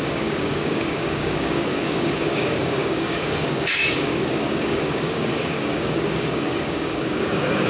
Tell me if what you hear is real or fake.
fake